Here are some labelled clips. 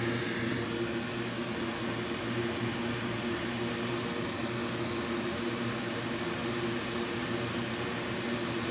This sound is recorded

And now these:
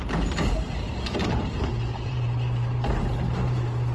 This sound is remade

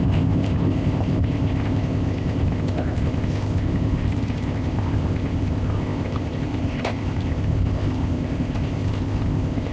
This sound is remade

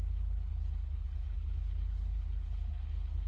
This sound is remade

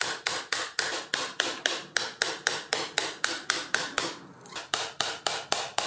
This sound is recorded